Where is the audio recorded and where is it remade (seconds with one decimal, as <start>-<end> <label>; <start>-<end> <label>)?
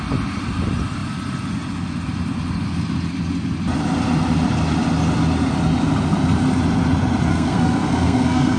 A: 0.0-7.3 recorded; 7.3-8.6 remade